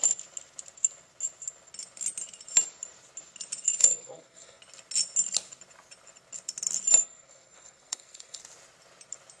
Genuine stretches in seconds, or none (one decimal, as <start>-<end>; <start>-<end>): 0.0-3.8; 4.6-7.0; 8.4-9.4